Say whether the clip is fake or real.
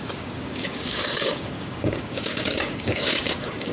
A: fake